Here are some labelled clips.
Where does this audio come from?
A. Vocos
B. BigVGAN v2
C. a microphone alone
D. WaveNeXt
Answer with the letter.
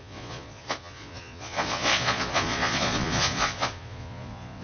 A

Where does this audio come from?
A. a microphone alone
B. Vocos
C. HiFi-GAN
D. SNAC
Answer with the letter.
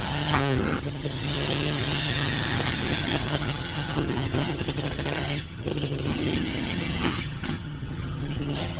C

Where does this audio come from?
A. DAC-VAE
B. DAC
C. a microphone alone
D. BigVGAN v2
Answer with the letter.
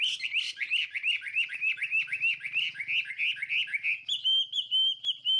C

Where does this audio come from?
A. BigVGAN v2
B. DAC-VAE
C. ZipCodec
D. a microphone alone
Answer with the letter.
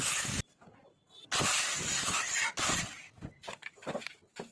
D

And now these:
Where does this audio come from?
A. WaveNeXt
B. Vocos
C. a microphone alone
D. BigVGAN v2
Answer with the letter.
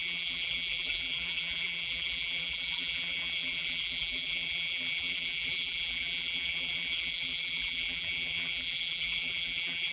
D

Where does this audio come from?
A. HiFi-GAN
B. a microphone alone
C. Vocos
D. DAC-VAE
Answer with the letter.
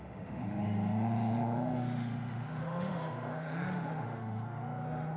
D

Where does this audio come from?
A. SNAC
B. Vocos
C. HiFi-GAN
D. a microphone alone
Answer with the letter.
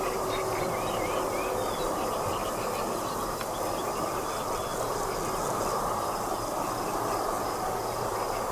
D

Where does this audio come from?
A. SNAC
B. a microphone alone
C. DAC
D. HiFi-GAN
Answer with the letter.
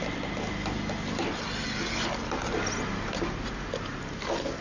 B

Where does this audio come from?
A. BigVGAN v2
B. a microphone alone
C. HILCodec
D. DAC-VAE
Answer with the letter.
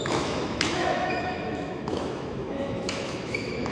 D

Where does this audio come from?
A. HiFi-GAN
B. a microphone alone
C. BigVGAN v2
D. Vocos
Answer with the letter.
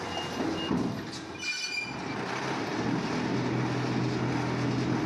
B